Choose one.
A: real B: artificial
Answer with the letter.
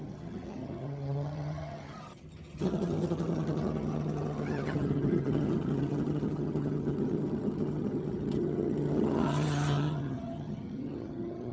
B